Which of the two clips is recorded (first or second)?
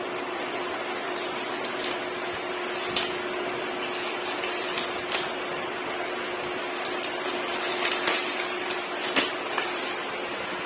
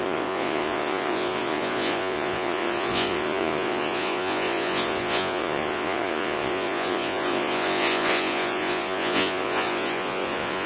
first